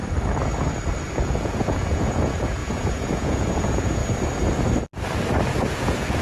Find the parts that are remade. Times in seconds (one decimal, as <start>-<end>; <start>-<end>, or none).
1.1-4.0; 5.7-6.2